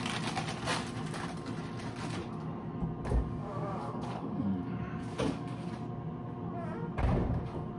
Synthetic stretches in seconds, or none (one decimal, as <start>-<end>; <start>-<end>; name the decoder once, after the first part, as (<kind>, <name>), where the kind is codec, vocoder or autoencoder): 3.4-5.7 (codec, DAC)